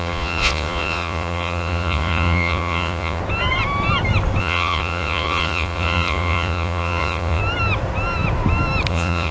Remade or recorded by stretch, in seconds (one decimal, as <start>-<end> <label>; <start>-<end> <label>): 0.0-3.2 remade; 3.2-4.4 recorded; 4.4-7.4 remade; 7.4-8.9 recorded; 8.9-9.3 remade